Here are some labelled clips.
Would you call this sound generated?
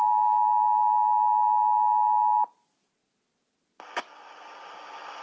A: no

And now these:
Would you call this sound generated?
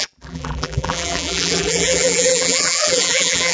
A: yes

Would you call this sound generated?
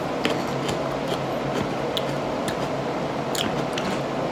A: no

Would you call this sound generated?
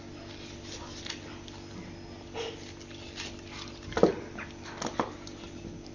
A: no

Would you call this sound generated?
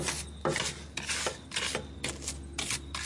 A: no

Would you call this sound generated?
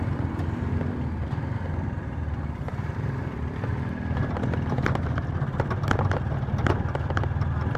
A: no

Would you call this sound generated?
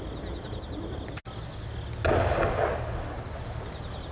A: no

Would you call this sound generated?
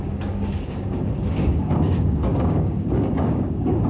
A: yes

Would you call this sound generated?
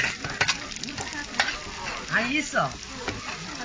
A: no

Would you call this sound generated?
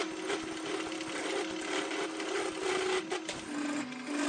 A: no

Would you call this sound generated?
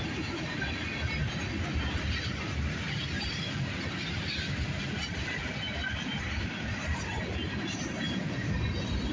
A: no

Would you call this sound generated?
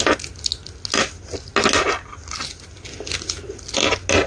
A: no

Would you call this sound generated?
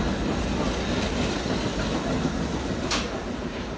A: no